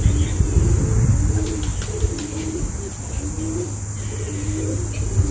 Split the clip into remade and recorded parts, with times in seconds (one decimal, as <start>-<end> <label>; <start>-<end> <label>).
0.0-5.3 recorded